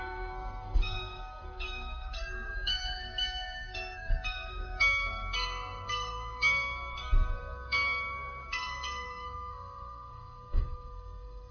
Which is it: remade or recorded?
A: remade